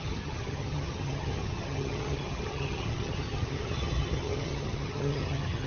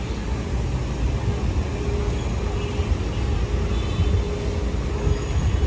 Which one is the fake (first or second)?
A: first